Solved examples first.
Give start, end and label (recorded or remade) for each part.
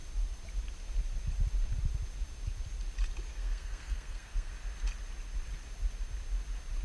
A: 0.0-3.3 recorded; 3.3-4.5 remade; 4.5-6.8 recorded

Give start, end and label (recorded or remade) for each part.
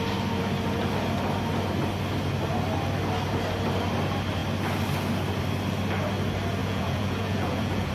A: 0.0-6.6 recorded; 6.6-7.9 remade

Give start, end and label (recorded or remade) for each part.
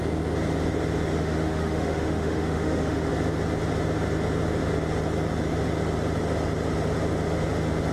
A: 0.0-1.1 recorded; 1.1-3.1 remade; 3.1-7.9 recorded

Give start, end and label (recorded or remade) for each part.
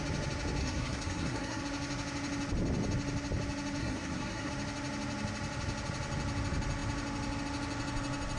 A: 0.0-0.6 recorded; 0.6-1.6 remade; 1.6-3.8 recorded; 3.8-4.5 remade; 4.5-8.4 recorded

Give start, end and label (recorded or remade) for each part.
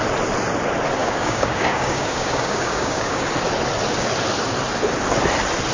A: 0.0-1.0 recorded; 1.0-3.2 remade; 3.2-5.7 recorded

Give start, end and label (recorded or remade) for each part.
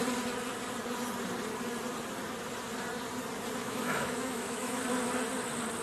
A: 0.0-3.6 recorded; 3.6-4.8 remade; 4.8-5.8 recorded